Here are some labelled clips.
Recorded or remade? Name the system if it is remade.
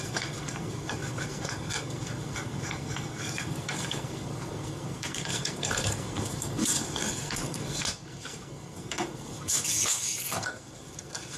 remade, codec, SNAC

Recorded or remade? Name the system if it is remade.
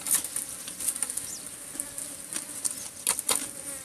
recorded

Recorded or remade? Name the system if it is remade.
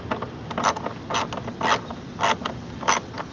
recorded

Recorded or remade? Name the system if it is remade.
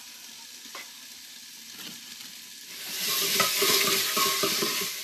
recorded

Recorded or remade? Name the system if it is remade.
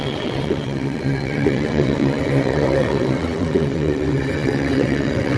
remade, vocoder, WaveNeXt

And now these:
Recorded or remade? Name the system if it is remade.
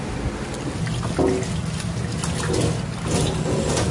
recorded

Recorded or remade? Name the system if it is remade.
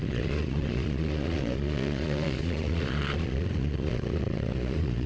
remade, vocoder, Vocos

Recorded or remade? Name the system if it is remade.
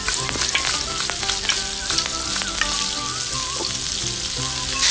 recorded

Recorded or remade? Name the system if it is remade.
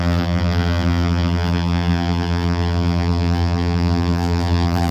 remade, vocoder, BigVGAN v2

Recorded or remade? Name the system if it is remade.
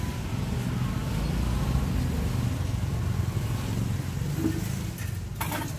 recorded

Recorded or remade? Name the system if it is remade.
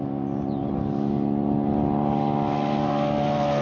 recorded